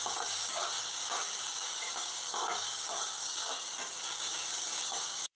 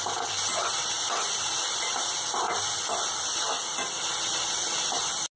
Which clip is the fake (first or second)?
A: first